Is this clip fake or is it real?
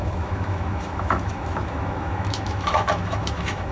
fake